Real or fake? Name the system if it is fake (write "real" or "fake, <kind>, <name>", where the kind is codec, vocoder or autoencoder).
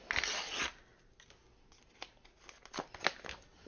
real